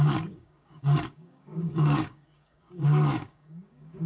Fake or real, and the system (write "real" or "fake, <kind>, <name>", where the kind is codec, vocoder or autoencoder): fake, codec, DAC